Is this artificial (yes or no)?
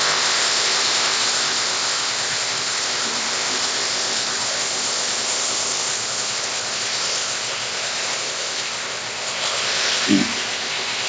yes